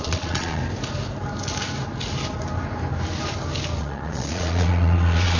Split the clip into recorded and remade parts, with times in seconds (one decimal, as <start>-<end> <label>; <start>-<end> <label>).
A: 0.0-0.6 remade; 0.6-3.8 recorded; 3.8-5.4 remade